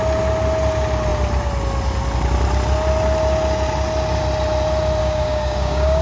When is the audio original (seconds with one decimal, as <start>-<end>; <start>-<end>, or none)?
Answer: 0.0-5.0